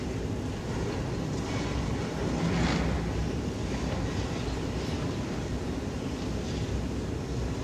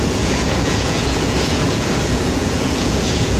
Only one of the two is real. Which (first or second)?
first